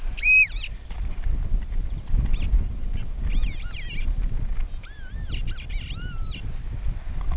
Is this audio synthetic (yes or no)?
yes